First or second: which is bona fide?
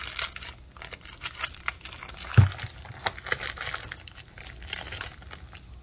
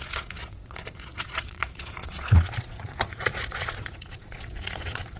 first